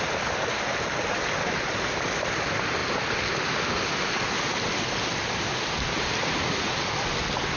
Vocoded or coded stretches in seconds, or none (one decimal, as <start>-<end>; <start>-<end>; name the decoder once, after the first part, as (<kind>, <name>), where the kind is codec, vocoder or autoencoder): none